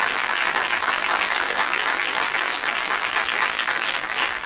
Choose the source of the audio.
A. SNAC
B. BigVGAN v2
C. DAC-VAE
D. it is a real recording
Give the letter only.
B